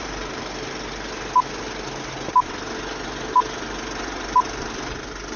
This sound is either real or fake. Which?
real